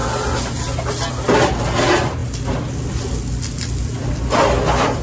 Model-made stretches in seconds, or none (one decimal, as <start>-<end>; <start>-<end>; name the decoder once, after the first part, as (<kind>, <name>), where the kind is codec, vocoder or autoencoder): none